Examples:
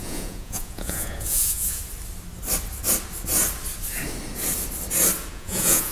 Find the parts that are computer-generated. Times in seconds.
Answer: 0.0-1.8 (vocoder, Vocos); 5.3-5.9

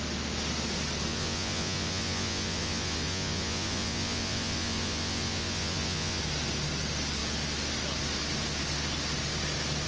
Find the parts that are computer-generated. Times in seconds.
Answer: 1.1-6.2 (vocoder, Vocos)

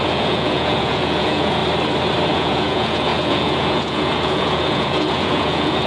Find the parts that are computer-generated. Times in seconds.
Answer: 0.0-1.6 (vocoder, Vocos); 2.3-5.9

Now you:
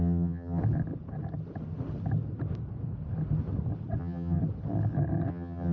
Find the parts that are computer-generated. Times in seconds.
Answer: 0.0-0.6 (vocoder, HiFi-GAN); 4.0-4.4; 5.3-5.7

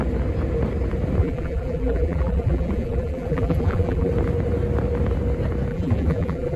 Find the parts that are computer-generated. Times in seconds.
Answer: 1.2-4.1 (vocoder, BigVGAN v2); 5.7-6.6

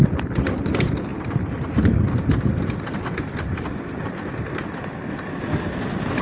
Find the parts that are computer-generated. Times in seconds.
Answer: none

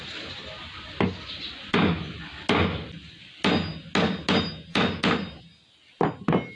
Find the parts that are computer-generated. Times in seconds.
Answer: none